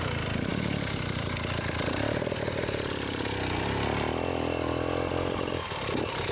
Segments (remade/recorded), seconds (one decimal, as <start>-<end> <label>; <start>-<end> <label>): 0.0-6.3 recorded